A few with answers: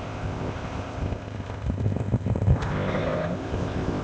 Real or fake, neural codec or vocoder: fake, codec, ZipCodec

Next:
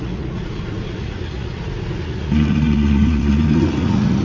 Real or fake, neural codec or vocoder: fake, vocoder, Vocos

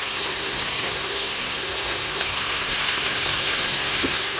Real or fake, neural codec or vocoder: fake, codec, SNAC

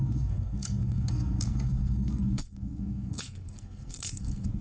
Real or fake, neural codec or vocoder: fake, codec, SNAC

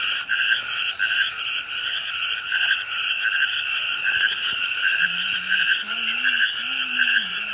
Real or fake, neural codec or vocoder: fake, vocoder, BigVGAN v2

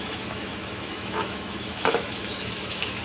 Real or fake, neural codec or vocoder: fake, autoencoder, DAC-VAE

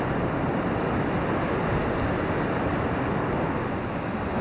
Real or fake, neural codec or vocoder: real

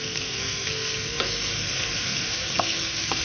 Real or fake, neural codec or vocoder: fake, codec, SNAC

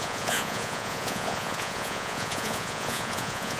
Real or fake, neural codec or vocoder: fake, vocoder, Vocos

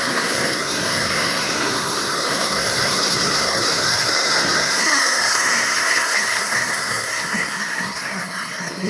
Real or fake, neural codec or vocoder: fake, codec, SNAC